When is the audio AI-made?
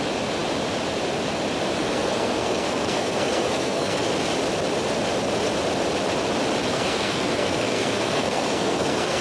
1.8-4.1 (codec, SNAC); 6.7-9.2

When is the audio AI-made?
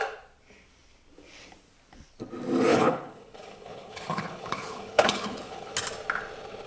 2.7-5.7 (codec, HILCodec)